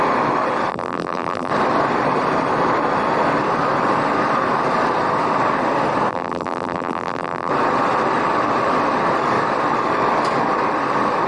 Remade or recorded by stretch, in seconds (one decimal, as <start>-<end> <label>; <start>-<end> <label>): 0.0-0.7 recorded; 0.7-1.5 remade; 1.5-6.1 recorded; 6.1-7.5 remade; 7.5-11.3 recorded

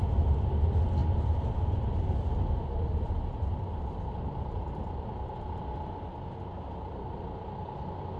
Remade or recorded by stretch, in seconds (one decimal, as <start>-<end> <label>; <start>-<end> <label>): 0.0-1.0 recorded; 1.0-5.0 remade; 5.0-8.2 recorded

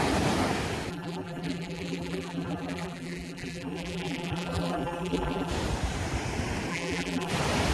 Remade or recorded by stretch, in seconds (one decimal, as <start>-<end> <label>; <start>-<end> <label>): 0.0-0.9 recorded; 0.9-5.5 remade; 5.5-6.7 recorded; 6.7-7.3 remade; 7.3-7.7 recorded